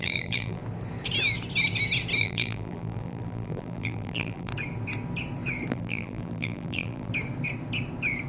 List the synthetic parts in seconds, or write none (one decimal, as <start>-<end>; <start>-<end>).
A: 0.0-0.6; 2.2-4.5; 5.7-7.1